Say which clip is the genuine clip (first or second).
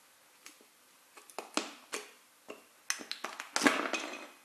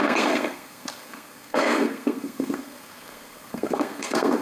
first